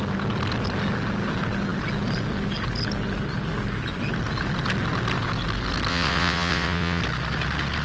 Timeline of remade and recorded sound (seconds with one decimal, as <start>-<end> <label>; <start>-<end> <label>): 0.0-5.9 recorded; 5.9-7.0 remade; 7.0-7.8 recorded